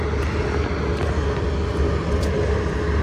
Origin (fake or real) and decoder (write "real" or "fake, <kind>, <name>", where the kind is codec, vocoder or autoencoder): real